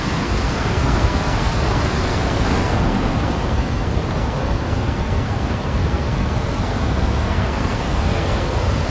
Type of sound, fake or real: fake